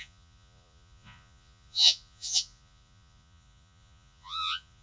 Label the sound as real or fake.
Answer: fake